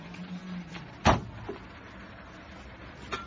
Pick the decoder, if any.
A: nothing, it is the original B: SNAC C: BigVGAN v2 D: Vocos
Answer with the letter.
A